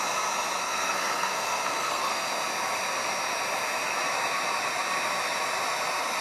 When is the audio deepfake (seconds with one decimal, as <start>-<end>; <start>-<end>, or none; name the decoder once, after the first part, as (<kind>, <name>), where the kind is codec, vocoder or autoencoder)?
0.6-2.3 (codec, SNAC)